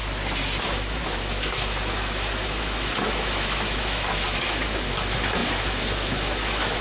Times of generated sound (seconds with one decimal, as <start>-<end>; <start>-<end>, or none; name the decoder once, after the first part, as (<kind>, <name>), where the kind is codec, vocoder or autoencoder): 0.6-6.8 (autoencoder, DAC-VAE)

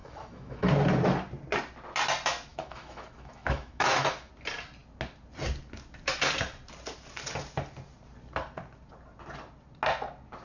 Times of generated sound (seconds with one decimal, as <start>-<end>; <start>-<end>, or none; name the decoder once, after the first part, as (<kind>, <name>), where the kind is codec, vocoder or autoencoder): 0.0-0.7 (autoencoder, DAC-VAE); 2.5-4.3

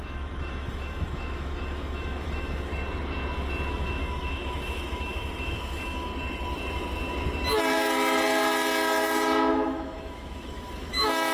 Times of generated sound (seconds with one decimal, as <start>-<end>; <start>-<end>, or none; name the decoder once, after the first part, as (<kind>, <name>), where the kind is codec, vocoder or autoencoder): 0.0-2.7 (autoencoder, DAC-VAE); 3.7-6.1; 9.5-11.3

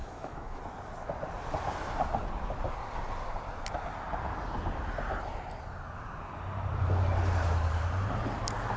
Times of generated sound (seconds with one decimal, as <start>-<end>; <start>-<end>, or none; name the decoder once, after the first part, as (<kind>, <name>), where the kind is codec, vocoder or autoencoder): 0.0-0.6 (autoencoder, DAC-VAE)